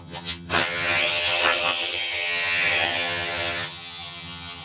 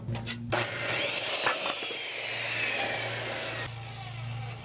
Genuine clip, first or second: second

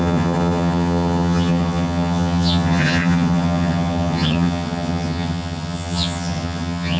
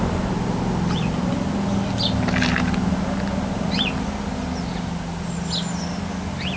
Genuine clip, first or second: second